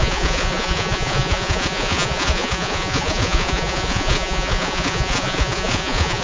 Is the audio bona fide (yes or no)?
no